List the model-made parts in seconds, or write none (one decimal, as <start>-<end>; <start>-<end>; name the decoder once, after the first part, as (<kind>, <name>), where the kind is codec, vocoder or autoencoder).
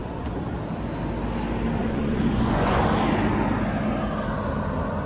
0.0-0.6 (vocoder, Vocos); 1.8-2.8